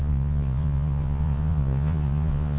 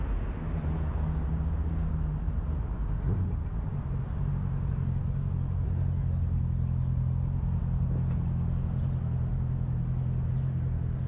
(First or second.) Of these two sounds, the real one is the second